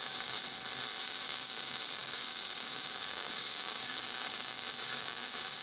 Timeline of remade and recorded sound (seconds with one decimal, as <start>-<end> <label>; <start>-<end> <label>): 0.0-0.4 remade; 0.4-1.0 recorded; 1.0-5.6 remade